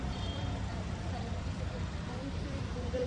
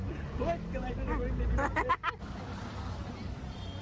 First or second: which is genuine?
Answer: second